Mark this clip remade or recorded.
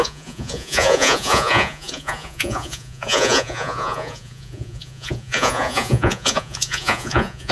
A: remade